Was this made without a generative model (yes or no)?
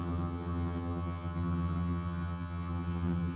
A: no